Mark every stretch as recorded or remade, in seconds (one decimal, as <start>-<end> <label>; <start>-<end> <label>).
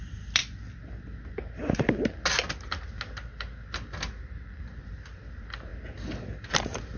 0.0-0.4 remade; 0.4-4.6 recorded; 4.6-5.7 remade; 5.7-6.5 recorded; 6.5-7.0 remade